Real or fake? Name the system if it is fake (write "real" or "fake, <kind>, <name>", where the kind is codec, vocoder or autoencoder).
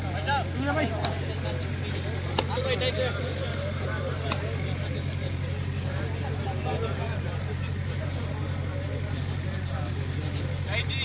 real